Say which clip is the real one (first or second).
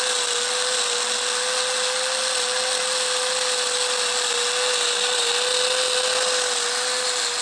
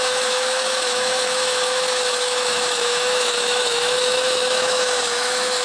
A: first